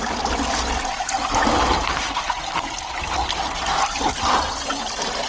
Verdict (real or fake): real